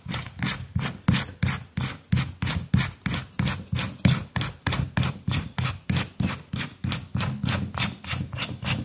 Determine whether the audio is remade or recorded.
recorded